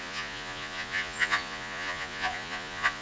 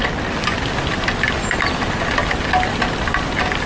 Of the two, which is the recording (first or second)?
second